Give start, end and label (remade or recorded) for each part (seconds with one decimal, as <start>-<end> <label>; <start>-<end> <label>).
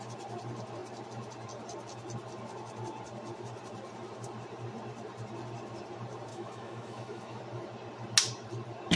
0.0-6.3 recorded; 6.3-7.4 remade; 7.4-9.0 recorded